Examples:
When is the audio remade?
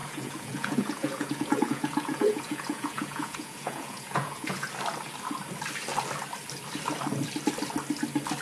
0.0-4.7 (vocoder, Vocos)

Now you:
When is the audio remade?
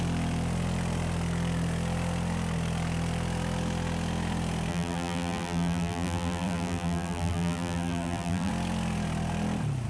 4.7-8.5 (vocoder, BigVGAN v2)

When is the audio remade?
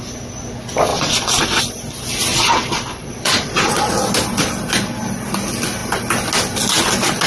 0.9-1.6 (vocoder, Vocos); 2.3-3.9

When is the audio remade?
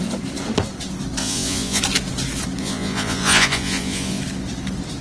1.2-1.8 (vocoder, Vocos); 2.6-4.2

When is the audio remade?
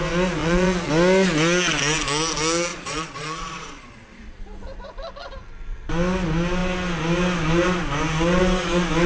0.4-0.9 (vocoder, Vocos); 2.7-4.4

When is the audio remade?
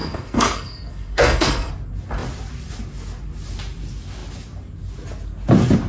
0.0-1.7 (codec, SNAC)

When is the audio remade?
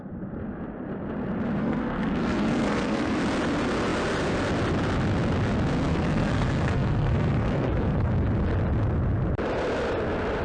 1.6-3.1 (codec, SNAC); 5.9-8.1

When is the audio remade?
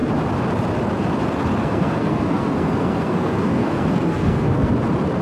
1.6-4.7 (codec, SNAC)